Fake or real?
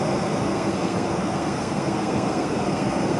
fake